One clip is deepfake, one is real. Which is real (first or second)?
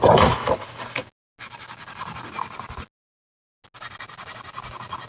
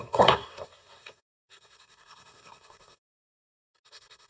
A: first